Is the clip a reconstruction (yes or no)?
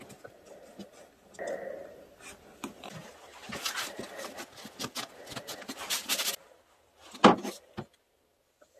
no